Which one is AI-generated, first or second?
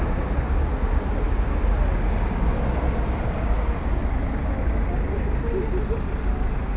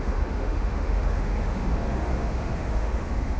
second